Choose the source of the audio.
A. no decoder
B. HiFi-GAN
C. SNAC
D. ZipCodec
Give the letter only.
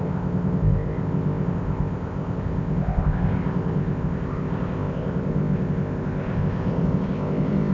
D